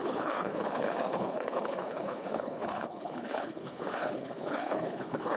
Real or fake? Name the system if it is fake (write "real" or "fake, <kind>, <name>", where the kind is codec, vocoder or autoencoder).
fake, codec, HILCodec